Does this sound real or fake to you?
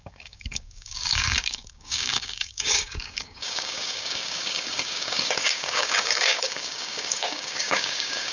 fake